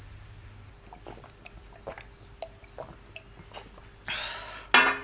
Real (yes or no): yes